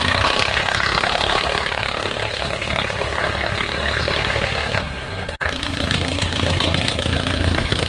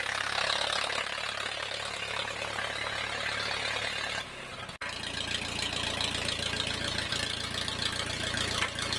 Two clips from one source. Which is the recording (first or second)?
second